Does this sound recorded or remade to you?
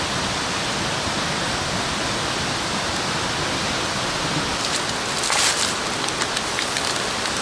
recorded